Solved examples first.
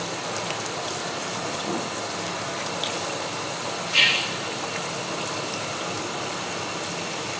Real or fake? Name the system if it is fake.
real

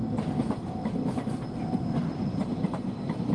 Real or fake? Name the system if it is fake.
real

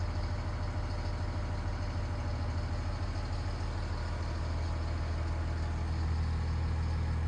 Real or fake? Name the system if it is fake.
real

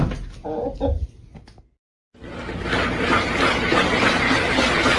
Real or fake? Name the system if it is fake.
real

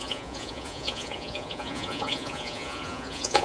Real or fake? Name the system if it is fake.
fake, vocoder, Vocos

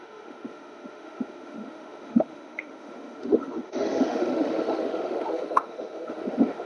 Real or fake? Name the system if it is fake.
fake, autoencoder, DAC-VAE